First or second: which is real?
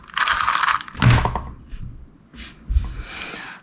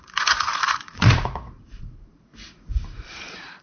first